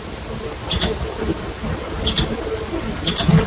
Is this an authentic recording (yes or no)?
yes